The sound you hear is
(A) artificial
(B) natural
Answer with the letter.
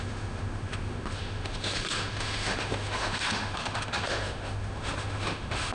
A